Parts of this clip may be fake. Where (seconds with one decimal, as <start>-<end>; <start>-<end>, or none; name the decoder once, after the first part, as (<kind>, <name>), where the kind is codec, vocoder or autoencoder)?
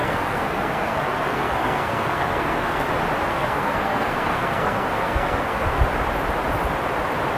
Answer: 0.0-2.9 (codec, SNAC); 3.3-5.8